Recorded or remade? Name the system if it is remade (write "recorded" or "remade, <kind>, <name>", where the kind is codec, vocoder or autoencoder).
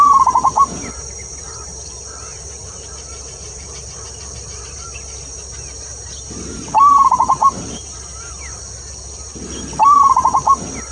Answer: remade, vocoder, BigVGAN v2